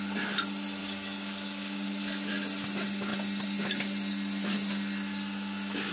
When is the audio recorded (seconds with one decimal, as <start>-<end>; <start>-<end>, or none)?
0.0-0.8; 2.3-5.9